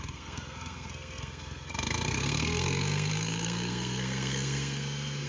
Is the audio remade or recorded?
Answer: remade